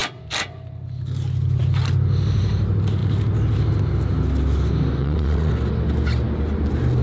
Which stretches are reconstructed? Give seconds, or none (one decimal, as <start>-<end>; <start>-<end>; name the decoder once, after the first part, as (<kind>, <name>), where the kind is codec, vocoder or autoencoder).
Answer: 5.0-5.5 (vocoder, WaveNeXt)

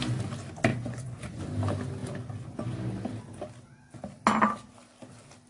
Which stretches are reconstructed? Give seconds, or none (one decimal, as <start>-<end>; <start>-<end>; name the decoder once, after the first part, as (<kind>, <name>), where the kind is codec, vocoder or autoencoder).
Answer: 0.7-1.4 (vocoder, Vocos)

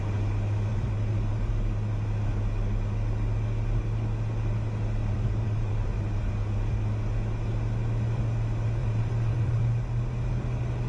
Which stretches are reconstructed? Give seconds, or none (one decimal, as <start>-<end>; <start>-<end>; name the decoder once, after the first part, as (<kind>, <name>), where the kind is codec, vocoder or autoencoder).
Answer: 0.7-1.5 (vocoder, BigVGAN v2); 5.0-6.3; 8.8-9.6

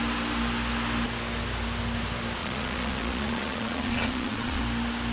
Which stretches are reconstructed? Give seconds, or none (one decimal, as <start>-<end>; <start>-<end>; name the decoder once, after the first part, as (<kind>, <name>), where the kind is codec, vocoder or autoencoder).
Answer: 2.4-4.6 (vocoder, Vocos)

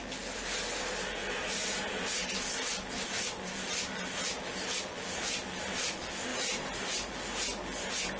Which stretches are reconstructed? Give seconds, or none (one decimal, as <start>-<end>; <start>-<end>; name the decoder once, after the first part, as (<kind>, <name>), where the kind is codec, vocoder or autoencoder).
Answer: 1.2-4.4 (vocoder, BigVGAN v2); 6.3-7.1

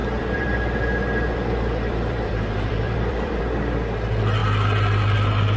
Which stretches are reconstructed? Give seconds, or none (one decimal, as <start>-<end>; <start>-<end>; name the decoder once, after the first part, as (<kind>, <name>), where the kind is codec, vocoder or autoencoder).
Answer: 0.0-3.4 (vocoder, BigVGAN v2); 4.4-5.6